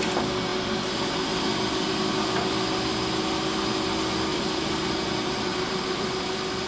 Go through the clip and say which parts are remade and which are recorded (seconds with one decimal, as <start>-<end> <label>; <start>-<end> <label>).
0.0-4.3 recorded; 4.3-6.1 remade; 6.1-6.7 recorded